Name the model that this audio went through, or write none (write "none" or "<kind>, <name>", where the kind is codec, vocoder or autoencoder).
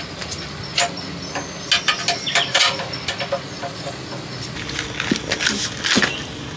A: none